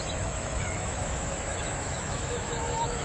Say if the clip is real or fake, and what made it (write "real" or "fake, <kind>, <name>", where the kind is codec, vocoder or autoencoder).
fake, autoencoder, DAC-VAE